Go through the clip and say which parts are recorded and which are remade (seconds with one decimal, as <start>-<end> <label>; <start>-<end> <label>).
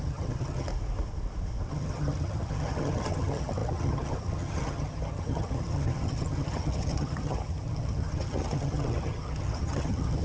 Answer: 0.0-0.7 remade; 0.7-1.7 recorded; 1.7-10.2 remade